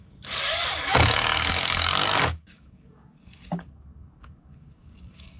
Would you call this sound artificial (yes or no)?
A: yes